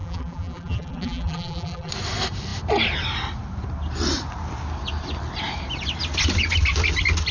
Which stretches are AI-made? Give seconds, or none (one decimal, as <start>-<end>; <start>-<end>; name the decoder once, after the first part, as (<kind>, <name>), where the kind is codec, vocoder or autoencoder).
0.0-1.9 (vocoder, BigVGAN v2)